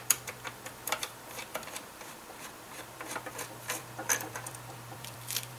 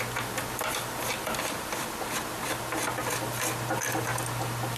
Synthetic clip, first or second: first